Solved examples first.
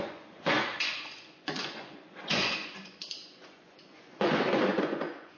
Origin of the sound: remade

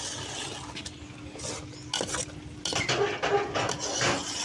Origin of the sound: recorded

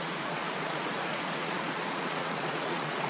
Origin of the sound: remade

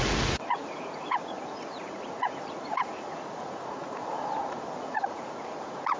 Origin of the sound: remade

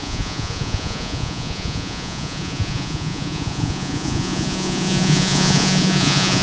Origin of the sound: remade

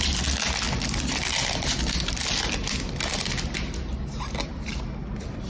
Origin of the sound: recorded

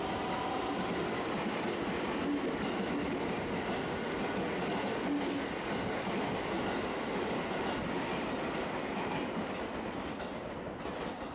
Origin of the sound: recorded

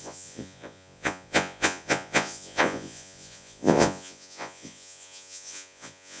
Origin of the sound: remade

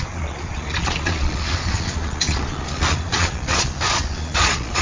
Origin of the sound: remade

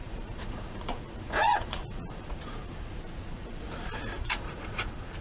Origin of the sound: remade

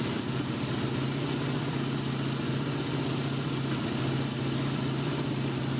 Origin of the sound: recorded